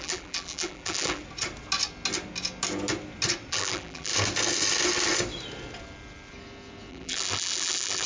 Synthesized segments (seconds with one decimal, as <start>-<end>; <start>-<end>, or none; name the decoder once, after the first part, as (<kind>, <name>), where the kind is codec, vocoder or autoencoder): 0.0-1.2 (vocoder, BigVGAN v2); 3.5-4.1; 6.9-8.1